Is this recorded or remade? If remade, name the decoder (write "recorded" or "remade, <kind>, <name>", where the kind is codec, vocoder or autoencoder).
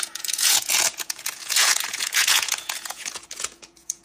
remade, vocoder, Vocos